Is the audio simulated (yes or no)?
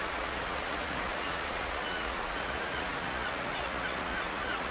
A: yes